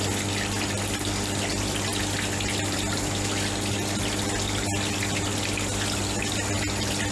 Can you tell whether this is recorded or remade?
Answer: recorded